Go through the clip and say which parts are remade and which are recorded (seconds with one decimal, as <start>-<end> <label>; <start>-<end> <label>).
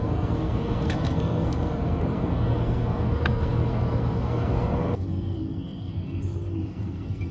0.0-7.3 remade